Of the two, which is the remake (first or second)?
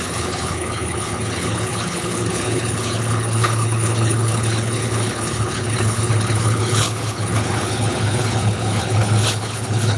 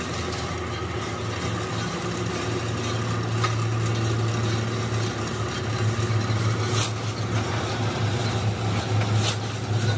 first